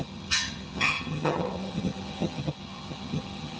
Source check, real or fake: fake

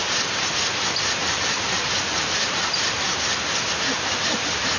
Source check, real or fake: real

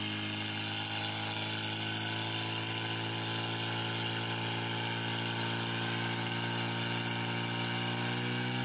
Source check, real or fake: real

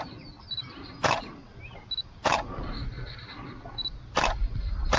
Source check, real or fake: real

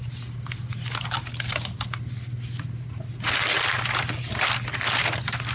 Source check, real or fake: real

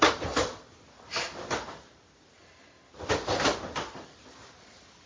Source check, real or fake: real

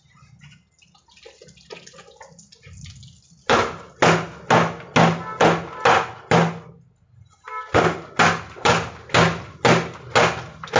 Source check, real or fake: real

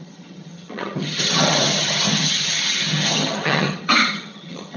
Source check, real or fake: fake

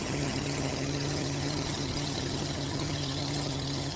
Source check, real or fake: fake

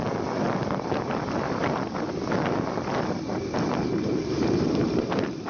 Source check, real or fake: real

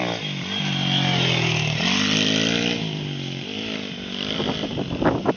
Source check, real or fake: real